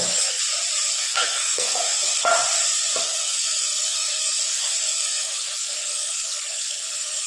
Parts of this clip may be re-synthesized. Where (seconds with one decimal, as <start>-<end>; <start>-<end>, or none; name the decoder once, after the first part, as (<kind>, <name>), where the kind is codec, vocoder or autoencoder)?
0.0-0.4 (codec, SNAC); 0.9-2.3; 3.0-7.3